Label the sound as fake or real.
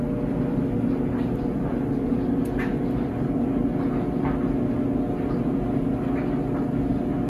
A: real